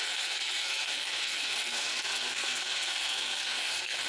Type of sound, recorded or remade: remade